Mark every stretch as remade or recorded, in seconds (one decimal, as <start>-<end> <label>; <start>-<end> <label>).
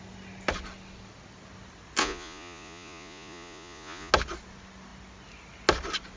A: 0.0-2.0 recorded; 2.0-4.1 remade; 4.1-6.2 recorded